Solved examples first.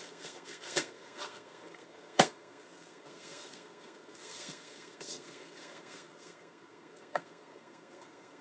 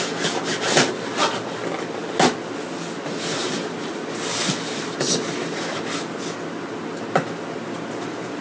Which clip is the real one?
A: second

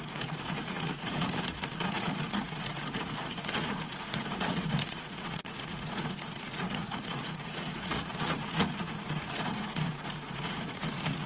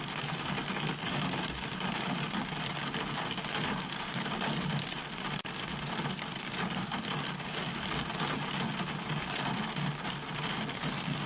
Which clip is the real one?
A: second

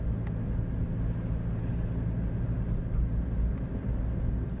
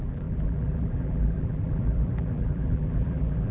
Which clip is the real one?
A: first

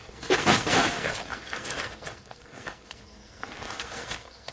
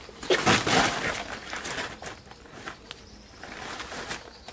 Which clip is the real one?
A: second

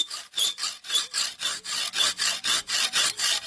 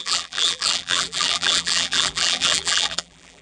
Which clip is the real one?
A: first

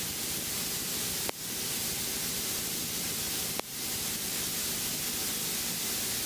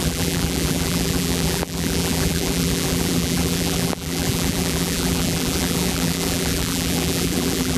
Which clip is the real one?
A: first